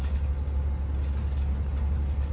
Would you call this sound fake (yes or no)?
no